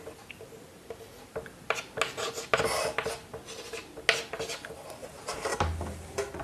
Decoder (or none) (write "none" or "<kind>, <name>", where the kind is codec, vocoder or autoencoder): none